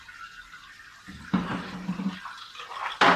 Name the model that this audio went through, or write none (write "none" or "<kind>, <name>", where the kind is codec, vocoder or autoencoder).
vocoder, BigVGAN v2